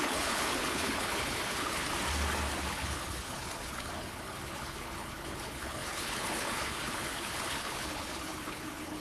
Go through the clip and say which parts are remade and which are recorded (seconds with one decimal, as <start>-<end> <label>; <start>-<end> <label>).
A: 0.0-1.9 remade; 1.9-2.7 recorded; 2.7-9.0 remade